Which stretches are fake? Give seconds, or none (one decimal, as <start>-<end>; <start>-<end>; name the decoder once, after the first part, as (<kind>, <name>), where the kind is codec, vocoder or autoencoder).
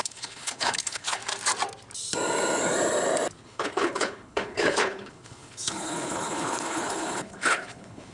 0.0-1.2 (codec, HILCodec); 3.4-8.1